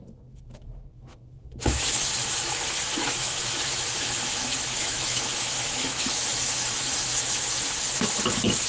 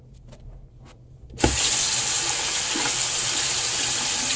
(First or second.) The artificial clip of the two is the first